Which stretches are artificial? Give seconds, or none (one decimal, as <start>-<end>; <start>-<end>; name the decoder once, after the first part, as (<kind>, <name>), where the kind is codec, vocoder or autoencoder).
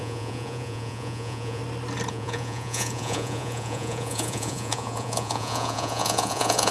0.0-1.6 (vocoder, Vocos); 2.1-6.7